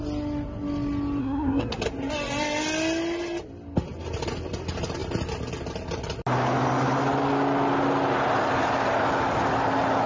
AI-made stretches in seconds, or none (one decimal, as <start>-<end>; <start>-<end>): 1.2-1.8